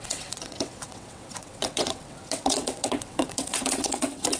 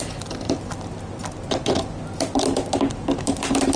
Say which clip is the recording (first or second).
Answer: second